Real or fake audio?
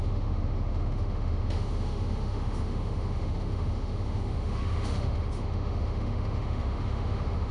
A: fake